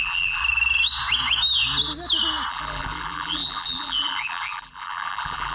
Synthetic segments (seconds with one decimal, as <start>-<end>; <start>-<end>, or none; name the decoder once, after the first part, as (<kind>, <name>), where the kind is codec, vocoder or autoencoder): 0.0-0.4 (vocoder, BigVGAN v2); 2.5-5.5